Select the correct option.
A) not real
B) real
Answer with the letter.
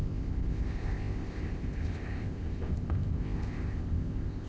A